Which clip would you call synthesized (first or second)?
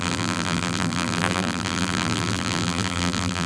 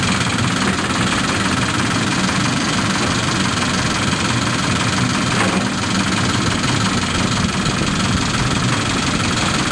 first